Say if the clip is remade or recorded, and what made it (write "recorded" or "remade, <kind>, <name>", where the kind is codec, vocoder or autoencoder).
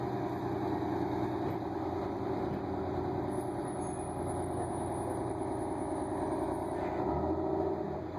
recorded